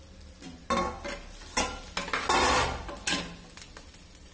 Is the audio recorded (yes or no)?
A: yes